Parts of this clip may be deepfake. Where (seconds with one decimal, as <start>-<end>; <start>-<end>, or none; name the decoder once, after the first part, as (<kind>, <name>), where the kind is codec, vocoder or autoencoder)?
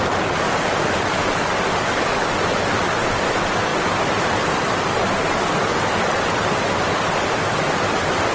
none